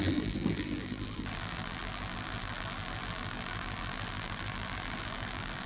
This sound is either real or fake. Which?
fake